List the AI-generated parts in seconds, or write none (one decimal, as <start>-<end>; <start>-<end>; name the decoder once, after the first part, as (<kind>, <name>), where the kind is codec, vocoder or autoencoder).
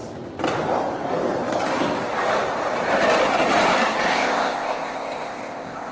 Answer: 4.1-5.9 (codec, ZipCodec)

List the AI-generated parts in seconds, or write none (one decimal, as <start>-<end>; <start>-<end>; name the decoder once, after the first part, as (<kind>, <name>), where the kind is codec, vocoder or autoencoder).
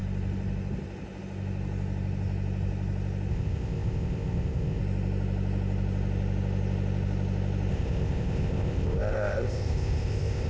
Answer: 3.3-4.8 (codec, ZipCodec); 7.7-10.5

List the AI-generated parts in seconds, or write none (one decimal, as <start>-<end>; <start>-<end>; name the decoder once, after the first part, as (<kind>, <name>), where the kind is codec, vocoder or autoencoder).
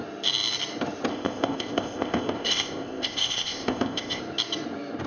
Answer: 1.1-4.2 (codec, ZipCodec)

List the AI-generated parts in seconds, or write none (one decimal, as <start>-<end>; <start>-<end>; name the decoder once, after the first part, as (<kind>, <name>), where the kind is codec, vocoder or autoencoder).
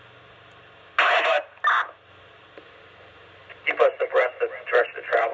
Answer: none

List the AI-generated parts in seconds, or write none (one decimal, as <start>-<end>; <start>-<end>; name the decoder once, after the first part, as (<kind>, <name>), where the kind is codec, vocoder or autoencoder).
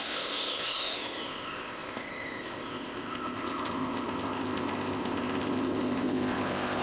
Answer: 0.0-6.8 (codec, ZipCodec)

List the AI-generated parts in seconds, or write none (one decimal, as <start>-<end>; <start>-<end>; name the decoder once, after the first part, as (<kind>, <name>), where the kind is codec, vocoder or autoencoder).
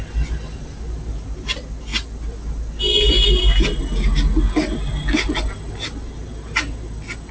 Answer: none